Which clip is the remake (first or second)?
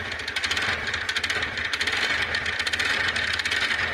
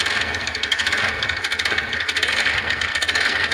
second